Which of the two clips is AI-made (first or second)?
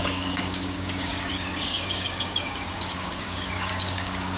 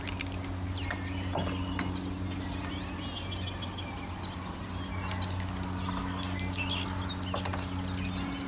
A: first